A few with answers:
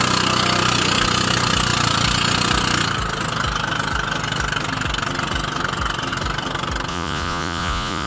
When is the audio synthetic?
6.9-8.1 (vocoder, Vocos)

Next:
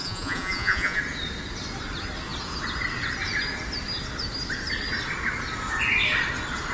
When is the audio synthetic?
0.0-1.0 (vocoder, Vocos)

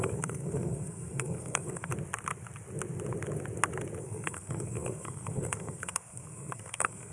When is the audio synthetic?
0.0-1.9 (codec, SNAC); 4.0-7.1

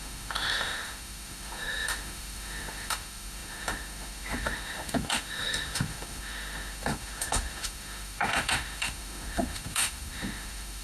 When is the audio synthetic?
0.0-10.8 (autoencoder, DAC-VAE)